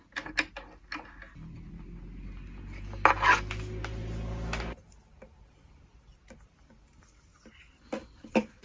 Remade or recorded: recorded